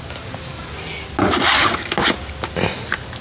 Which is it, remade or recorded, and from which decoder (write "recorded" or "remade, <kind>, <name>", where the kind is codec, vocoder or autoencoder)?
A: recorded